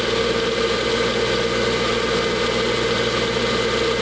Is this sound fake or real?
real